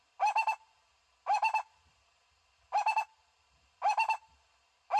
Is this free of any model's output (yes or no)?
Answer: yes